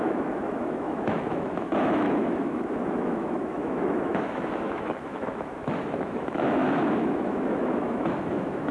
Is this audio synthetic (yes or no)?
yes